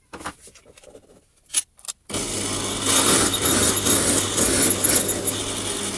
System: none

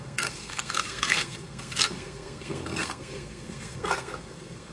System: codec, SNAC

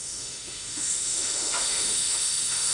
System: autoencoder, DAC-VAE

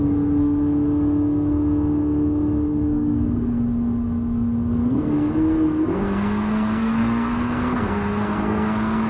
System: codec, SNAC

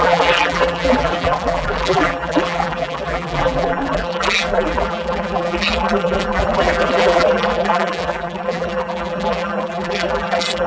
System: vocoder, BigVGAN v2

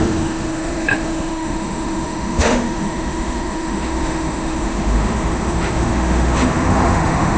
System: autoencoder, DAC-VAE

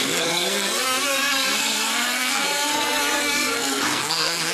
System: codec, SNAC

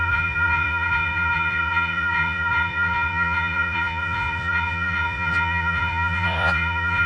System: vocoder, Vocos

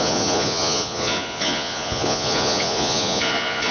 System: vocoder, Vocos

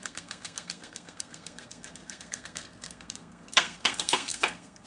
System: codec, SNAC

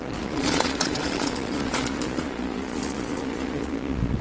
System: vocoder, Vocos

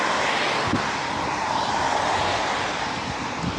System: vocoder, BigVGAN v2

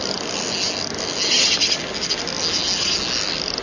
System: none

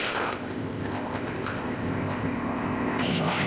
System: codec, ZipCodec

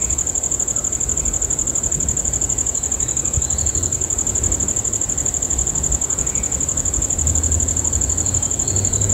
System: vocoder, Vocos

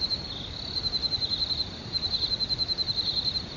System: none